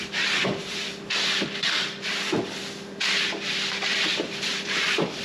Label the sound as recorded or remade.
remade